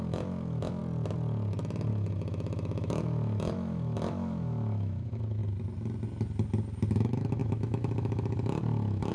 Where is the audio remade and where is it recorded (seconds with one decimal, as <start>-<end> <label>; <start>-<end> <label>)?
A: 0.0-0.8 remade; 0.8-1.9 recorded; 1.9-5.4 remade; 5.4-6.9 recorded; 6.9-9.1 remade